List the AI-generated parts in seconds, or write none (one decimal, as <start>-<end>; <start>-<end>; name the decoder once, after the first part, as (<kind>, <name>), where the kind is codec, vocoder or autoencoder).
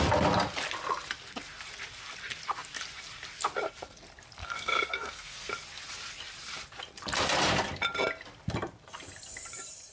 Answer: 4.4-5.5 (codec, SNAC)